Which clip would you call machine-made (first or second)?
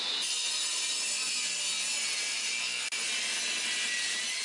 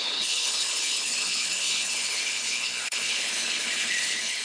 second